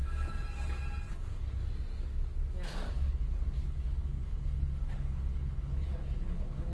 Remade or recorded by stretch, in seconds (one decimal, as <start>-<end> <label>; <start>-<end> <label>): 0.0-1.1 recorded; 1.1-1.6 remade; 1.6-2.9 recorded; 2.9-6.7 remade